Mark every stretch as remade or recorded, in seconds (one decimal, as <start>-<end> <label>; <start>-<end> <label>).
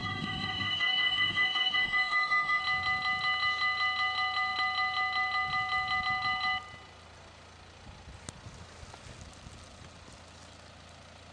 0.0-2.6 remade; 2.6-11.3 recorded